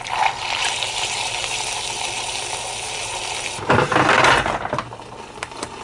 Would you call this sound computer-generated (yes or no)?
no